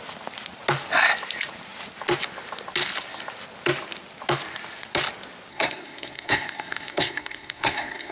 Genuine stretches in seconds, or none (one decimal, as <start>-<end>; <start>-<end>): 0.0-5.5